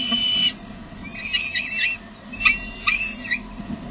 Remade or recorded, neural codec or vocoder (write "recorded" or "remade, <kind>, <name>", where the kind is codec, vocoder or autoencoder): recorded